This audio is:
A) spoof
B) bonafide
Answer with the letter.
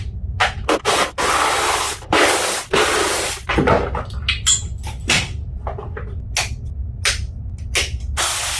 B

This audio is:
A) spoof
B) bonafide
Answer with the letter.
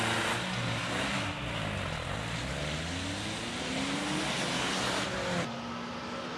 B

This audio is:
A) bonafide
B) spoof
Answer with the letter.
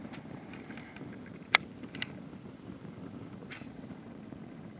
A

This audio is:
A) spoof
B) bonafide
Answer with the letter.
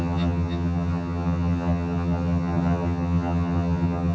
A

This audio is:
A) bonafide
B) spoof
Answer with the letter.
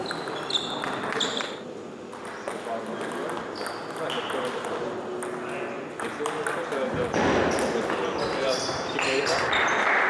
A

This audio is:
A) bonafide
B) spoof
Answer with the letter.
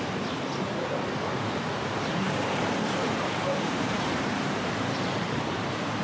B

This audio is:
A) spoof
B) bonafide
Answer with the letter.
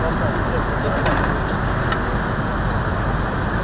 B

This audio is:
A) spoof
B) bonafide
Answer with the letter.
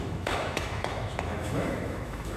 A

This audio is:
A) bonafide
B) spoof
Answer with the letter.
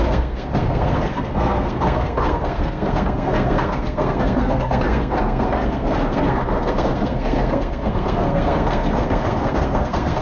B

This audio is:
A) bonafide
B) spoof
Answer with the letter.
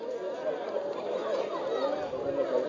A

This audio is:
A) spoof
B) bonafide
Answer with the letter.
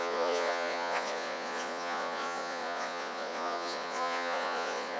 A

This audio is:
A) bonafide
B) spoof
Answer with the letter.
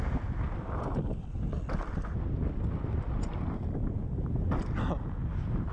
A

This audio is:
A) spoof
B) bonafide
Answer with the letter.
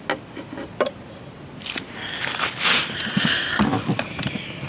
B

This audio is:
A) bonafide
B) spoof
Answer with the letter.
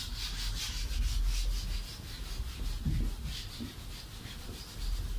A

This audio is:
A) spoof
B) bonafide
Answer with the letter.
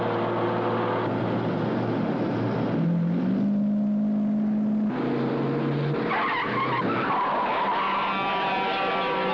B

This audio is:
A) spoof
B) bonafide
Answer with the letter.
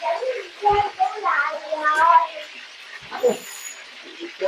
B